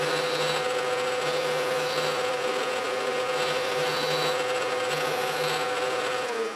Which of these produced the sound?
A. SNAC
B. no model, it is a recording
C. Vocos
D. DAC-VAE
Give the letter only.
B